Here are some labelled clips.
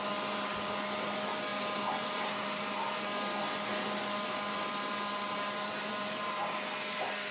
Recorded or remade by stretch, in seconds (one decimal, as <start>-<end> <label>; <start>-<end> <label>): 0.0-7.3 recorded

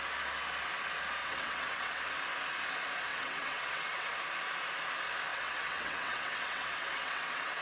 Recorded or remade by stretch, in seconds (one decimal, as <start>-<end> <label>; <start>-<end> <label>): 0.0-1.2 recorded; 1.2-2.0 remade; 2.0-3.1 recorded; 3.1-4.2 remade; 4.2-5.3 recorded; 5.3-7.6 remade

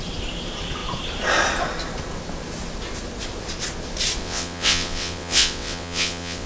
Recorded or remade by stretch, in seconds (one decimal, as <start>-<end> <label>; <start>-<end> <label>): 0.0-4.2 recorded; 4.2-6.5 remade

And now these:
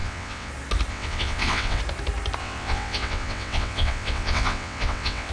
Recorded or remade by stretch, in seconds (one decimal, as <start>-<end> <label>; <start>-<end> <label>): 0.0-0.5 remade; 0.5-0.9 recorded; 0.9-1.8 remade; 1.8-2.4 recorded; 2.4-5.3 remade